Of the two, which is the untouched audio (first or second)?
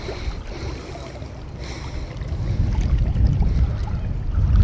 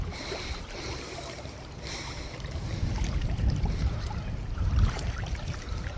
first